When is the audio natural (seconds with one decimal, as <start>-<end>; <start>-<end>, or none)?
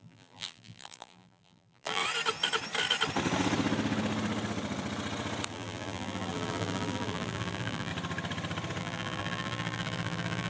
2.0-5.5; 7.9-8.8